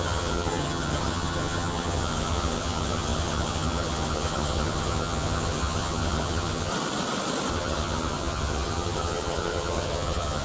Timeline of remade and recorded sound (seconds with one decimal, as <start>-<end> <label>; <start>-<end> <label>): 0.0-6.7 remade; 6.7-7.5 recorded; 7.5-10.4 remade